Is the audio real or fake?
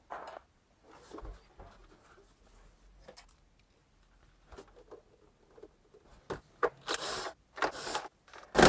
real